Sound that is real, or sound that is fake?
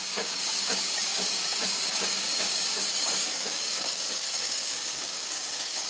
fake